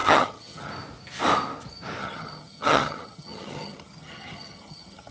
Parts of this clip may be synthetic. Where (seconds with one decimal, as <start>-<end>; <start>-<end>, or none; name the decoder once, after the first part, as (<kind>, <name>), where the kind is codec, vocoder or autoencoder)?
0.0-0.7 (vocoder, HiFi-GAN); 2.0-5.1